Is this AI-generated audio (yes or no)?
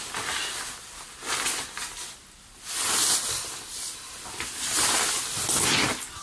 no